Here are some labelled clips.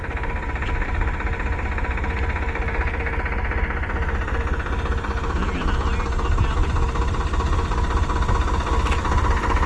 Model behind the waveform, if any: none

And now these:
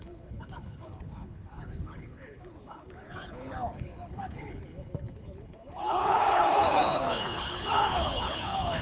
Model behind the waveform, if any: codec, HILCodec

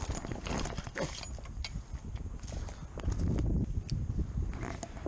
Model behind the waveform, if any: none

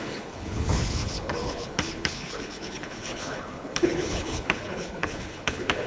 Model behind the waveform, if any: codec, HILCodec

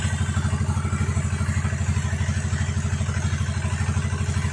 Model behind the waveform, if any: none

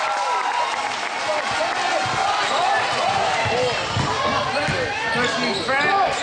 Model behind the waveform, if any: none